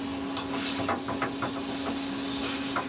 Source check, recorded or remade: recorded